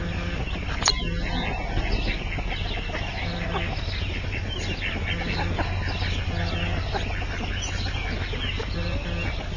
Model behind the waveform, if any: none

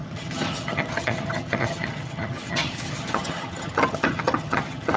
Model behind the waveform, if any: vocoder, HiFi-GAN